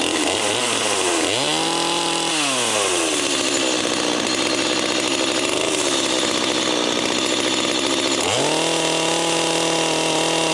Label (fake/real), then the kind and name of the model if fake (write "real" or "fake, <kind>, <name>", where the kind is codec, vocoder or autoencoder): real